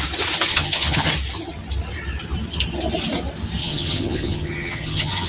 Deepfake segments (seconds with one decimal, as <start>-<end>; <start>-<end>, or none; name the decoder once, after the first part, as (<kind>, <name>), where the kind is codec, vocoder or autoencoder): 0.5-1.1 (vocoder, HiFi-GAN); 3.6-5.3